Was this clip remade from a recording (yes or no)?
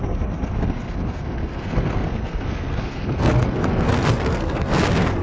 yes